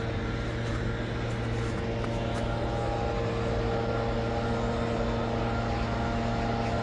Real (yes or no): yes